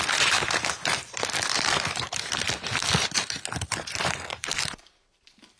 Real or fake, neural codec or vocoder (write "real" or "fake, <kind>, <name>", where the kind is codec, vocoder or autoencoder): fake, vocoder, BigVGAN v2